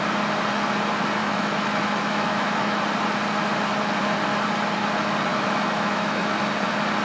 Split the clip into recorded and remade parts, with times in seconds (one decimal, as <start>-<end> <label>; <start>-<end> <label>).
0.0-1.2 recorded; 1.2-2.8 remade; 2.8-5.3 recorded; 5.3-6.4 remade; 6.4-7.0 recorded

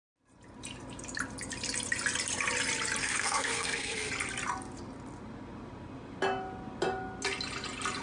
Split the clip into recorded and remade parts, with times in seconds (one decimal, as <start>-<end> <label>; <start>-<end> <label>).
0.0-3.0 recorded; 3.0-4.1 remade; 4.1-8.0 recorded